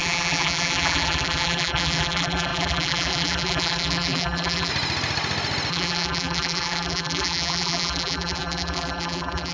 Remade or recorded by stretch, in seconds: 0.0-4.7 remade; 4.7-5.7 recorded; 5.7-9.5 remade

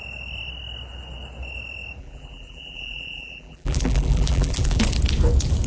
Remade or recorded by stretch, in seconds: 0.0-2.0 recorded; 2.0-4.8 remade; 4.8-5.7 recorded

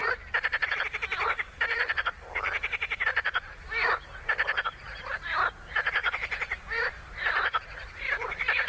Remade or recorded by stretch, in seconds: 0.0-8.7 remade

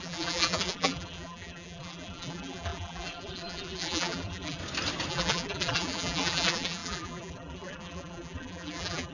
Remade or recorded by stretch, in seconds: 0.0-4.6 remade; 4.6-5.1 recorded; 5.1-9.1 remade

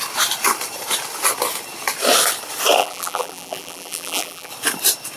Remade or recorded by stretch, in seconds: 0.0-2.8 recorded; 2.8-4.5 remade; 4.5-5.2 recorded